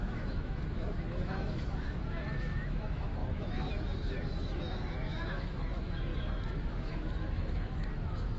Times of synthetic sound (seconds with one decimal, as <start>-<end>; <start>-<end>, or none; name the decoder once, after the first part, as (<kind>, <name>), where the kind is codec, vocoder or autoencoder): 0.0-8.4 (autoencoder, DAC-VAE)